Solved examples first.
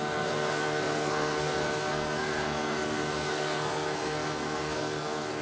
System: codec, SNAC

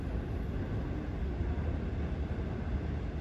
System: none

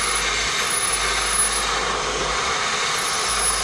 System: none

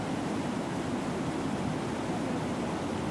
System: none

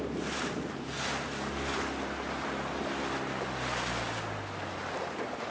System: none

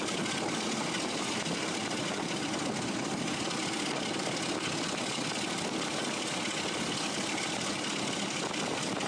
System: none